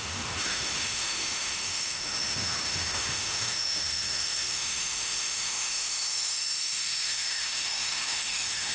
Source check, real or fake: fake